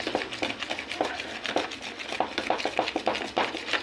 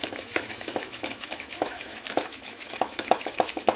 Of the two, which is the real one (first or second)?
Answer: first